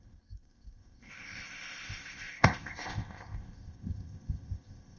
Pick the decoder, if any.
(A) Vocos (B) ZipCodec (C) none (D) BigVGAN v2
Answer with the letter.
B